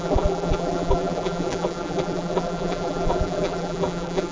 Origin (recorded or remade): remade